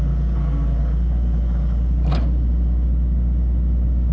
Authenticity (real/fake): real